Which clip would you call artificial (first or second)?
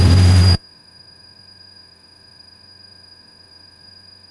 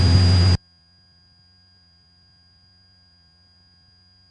first